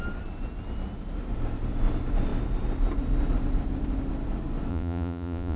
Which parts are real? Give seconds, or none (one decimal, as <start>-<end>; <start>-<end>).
0.0-4.7